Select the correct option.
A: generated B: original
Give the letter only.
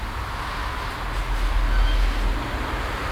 B